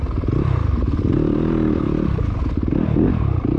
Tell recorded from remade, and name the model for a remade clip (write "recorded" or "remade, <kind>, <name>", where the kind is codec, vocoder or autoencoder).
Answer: remade, vocoder, BigVGAN v2